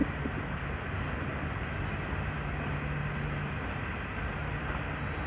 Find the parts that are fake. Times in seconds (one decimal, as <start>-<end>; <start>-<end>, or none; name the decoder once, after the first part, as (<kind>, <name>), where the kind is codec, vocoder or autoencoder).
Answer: none